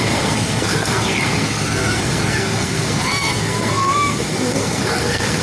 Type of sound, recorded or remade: remade